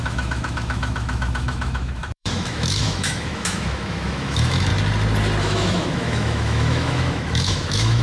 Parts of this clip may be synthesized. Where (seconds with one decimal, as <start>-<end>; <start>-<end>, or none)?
0.0-4.7; 5.4-8.0